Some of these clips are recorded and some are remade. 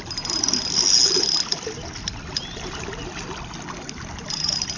recorded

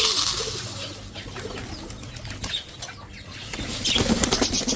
recorded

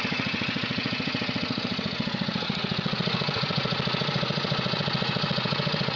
remade